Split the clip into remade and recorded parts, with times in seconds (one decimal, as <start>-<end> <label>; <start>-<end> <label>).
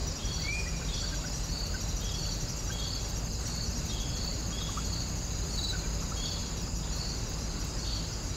0.0-1.0 remade; 1.0-8.4 recorded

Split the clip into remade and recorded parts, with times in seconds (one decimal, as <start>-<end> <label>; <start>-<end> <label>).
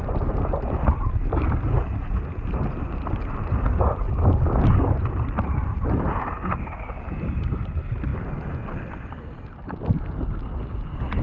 0.0-11.2 recorded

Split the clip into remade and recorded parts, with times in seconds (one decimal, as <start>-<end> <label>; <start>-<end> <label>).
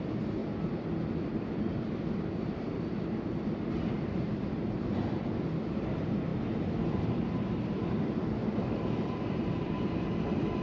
0.0-6.3 remade; 6.3-6.8 recorded; 6.8-10.6 remade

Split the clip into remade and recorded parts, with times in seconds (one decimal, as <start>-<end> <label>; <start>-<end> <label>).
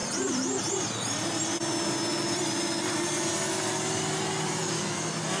0.0-0.6 remade; 0.6-5.4 recorded